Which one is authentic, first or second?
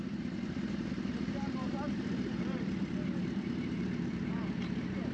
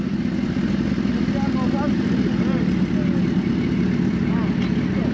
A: second